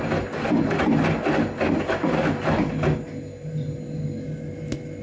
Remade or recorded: recorded